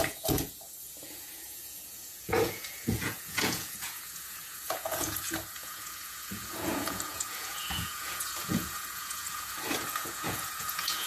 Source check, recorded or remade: remade